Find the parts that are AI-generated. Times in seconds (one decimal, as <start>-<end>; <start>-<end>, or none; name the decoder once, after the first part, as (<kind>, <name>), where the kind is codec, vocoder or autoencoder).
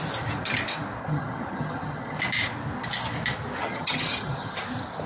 1.0-2.2 (vocoder, HiFi-GAN); 3.6-4.6